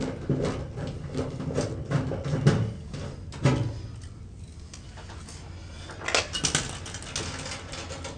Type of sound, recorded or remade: recorded